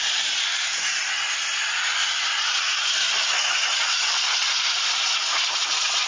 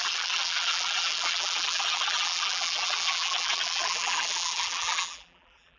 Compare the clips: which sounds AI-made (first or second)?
second